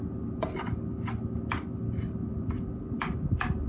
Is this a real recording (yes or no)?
yes